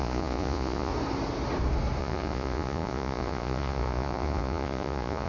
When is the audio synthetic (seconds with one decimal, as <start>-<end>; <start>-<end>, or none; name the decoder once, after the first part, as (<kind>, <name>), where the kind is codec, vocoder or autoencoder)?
0.0-0.9 (vocoder, Vocos); 2.0-5.3